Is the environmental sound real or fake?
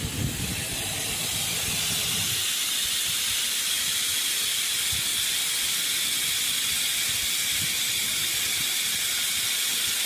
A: real